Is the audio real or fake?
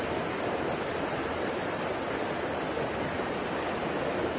real